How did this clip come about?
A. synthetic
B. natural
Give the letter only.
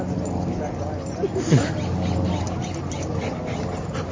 B